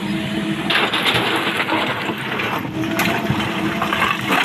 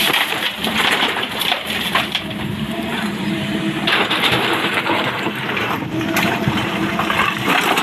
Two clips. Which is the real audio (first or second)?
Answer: first